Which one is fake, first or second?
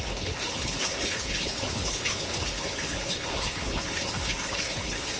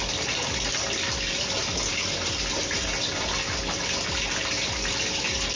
first